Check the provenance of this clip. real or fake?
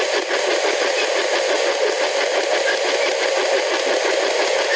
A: real